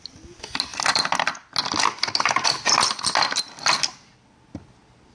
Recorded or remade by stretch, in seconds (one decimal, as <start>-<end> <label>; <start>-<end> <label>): 0.0-5.1 recorded